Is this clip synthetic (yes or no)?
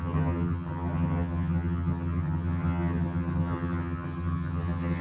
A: yes